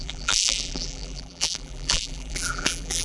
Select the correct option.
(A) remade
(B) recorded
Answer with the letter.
A